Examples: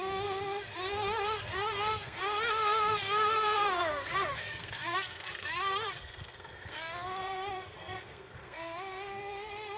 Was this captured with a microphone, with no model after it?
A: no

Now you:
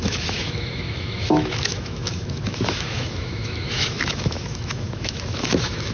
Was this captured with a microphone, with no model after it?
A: no